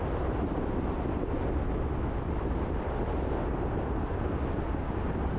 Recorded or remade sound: recorded